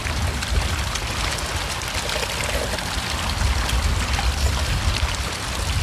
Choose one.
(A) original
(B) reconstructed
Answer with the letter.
A